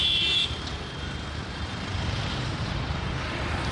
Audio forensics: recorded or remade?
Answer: remade